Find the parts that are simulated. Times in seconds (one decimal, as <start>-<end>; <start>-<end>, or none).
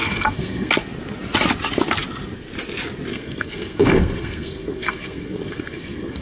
0.0-0.7; 3.1-6.2